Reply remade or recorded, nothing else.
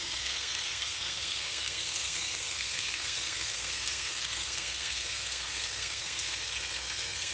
remade